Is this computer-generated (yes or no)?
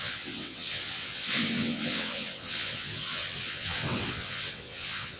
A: yes